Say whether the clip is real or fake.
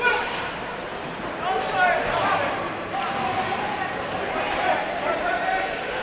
fake